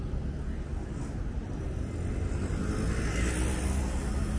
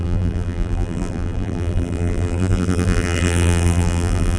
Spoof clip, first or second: second